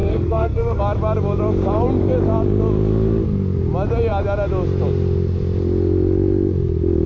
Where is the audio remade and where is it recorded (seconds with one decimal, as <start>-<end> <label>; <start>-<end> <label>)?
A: 0.0-0.8 remade; 0.8-7.1 recorded